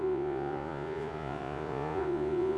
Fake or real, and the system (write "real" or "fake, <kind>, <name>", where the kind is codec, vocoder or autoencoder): fake, vocoder, Vocos